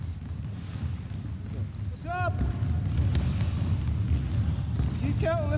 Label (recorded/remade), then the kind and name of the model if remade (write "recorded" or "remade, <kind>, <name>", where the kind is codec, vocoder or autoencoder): recorded